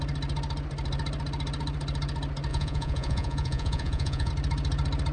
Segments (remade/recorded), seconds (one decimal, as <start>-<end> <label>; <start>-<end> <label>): 0.0-2.5 recorded; 2.5-4.3 remade; 4.3-5.1 recorded